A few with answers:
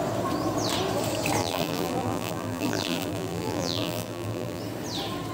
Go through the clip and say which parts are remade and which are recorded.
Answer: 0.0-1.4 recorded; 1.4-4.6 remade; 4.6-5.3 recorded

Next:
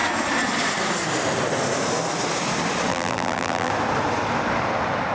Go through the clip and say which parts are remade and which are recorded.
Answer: 0.0-2.9 recorded; 2.9-3.7 remade; 3.7-5.1 recorded

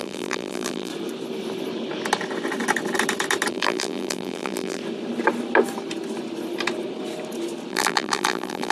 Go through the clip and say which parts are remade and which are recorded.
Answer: 0.0-0.9 remade; 0.9-3.5 recorded; 3.5-4.8 remade; 4.8-7.7 recorded; 7.7-8.7 remade

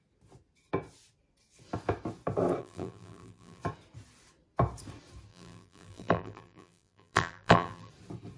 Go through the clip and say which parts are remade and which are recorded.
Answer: 0.0-2.6 recorded; 2.6-3.6 remade; 3.6-5.3 recorded; 5.3-7.9 remade; 7.9-8.4 recorded

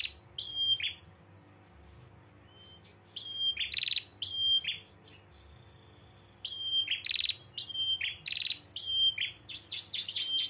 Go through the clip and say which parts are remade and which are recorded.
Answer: 0.0-10.5 recorded

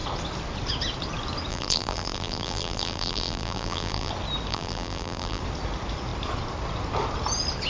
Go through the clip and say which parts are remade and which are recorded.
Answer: 0.0-1.5 recorded; 1.5-4.1 remade; 4.1-4.5 recorded; 4.5-5.4 remade; 5.4-7.7 recorded